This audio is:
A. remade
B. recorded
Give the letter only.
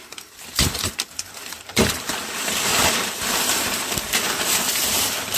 A